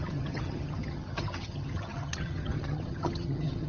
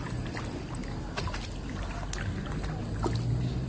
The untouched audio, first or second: second